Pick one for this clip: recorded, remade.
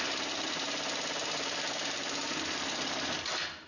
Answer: recorded